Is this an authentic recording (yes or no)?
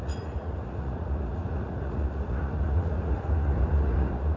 no